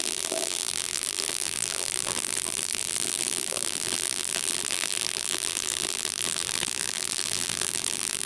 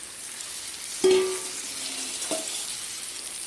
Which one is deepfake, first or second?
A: first